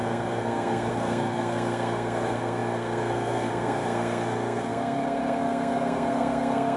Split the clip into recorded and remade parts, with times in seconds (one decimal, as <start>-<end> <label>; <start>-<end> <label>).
0.0-6.8 remade